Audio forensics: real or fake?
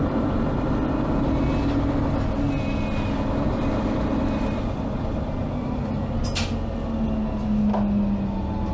real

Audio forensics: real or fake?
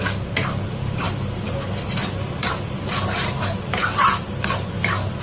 real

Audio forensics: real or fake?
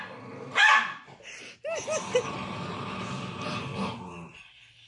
real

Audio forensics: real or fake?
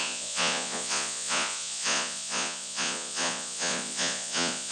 fake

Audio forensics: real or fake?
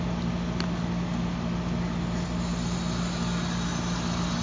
real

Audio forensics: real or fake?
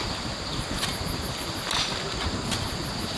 real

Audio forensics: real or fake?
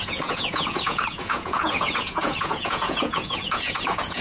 fake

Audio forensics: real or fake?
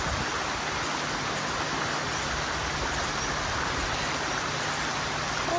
real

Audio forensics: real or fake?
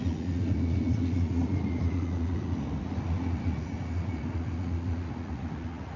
fake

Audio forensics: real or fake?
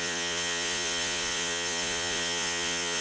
fake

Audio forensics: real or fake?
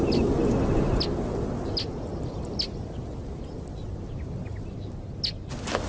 real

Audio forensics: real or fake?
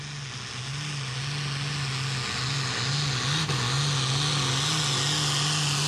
real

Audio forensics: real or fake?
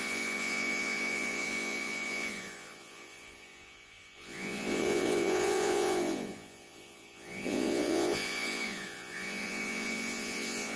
fake